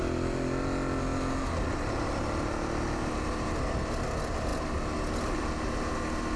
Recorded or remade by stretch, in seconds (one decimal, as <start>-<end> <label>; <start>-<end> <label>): 0.0-6.4 recorded